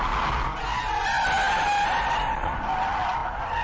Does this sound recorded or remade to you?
recorded